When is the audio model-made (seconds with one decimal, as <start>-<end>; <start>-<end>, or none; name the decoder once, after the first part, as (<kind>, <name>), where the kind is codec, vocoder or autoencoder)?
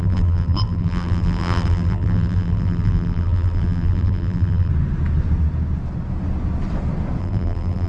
0.0-4.7 (vocoder, BigVGAN v2); 7.2-7.9